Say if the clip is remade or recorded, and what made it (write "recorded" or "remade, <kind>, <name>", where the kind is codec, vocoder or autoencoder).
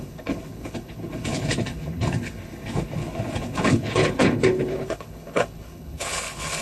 remade, codec, HILCodec